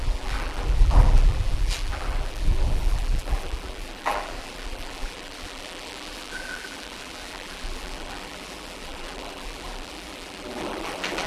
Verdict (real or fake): fake